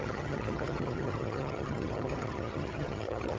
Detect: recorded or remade remade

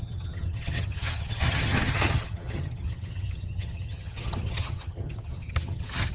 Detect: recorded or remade remade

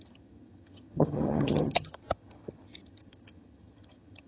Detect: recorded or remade remade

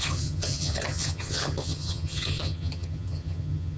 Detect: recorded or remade remade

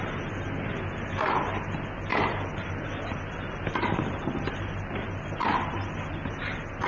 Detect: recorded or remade recorded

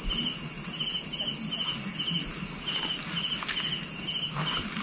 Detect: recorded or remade recorded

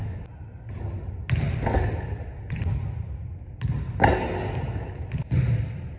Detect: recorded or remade recorded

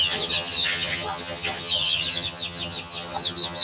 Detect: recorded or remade remade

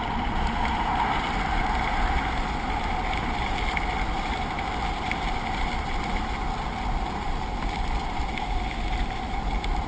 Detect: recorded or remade recorded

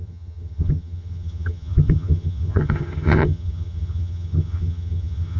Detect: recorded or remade remade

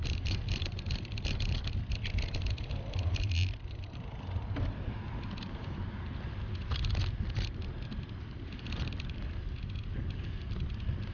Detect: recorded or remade recorded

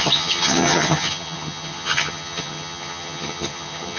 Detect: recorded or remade remade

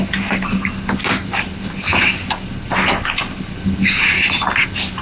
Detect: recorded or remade recorded